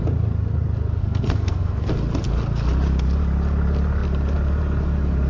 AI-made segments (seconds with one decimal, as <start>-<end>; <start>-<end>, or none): 1.0-1.9